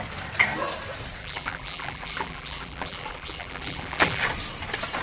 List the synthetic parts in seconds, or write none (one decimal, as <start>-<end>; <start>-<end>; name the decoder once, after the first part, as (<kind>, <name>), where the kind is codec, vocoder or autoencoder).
1.2-4.2 (vocoder, BigVGAN v2)

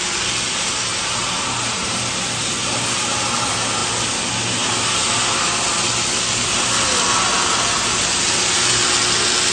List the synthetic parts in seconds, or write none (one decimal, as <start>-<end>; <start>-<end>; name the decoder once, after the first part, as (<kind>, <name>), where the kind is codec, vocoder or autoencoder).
0.9-2.1 (vocoder, BigVGAN v2)

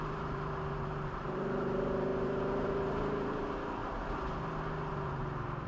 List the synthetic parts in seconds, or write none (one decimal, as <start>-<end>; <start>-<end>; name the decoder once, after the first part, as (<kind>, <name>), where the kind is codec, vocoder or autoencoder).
0.0-3.8 (vocoder, BigVGAN v2); 4.9-5.7

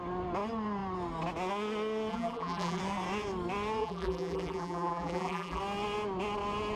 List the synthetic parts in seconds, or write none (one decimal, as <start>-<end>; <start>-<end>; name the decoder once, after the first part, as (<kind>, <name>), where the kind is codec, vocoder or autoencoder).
2.1-2.8 (vocoder, BigVGAN v2); 3.8-5.6

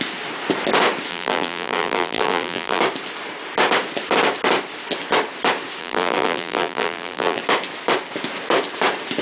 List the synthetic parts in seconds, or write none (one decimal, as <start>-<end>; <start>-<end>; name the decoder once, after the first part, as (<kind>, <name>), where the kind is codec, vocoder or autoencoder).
1.1-2.8 (vocoder, BigVGAN v2); 5.8-7.4

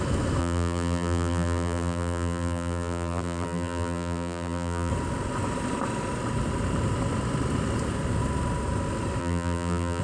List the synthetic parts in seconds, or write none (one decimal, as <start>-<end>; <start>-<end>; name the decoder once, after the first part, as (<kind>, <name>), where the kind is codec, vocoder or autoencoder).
0.4-4.9 (vocoder, BigVGAN v2); 9.2-10.0

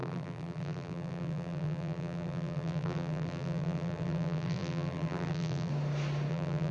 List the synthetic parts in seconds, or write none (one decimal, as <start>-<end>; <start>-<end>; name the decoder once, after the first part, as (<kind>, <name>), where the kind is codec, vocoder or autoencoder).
0.0-5.7 (vocoder, BigVGAN v2); 6.3-6.7

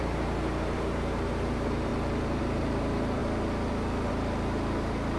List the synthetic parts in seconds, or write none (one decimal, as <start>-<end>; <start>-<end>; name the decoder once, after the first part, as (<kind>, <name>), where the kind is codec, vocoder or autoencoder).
0.0-1.9 (vocoder, BigVGAN v2); 2.4-3.2; 4.1-5.2